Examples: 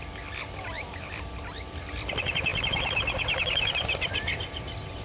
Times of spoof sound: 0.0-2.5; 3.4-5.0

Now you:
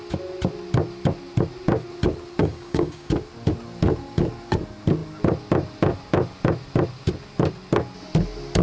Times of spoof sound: 2.4-3.1

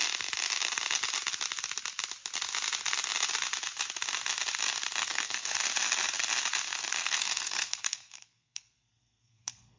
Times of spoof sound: 5.0-5.7; 7.0-9.8